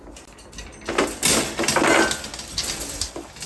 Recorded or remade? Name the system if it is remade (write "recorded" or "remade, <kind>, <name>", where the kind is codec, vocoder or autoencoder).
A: recorded